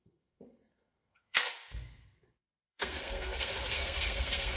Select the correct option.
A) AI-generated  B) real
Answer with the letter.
A